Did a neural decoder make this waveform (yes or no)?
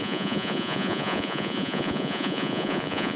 yes